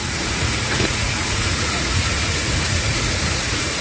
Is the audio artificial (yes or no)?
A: yes